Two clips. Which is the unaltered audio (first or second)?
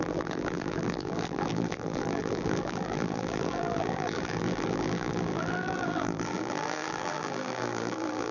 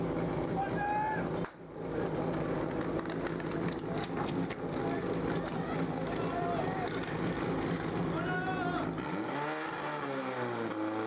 second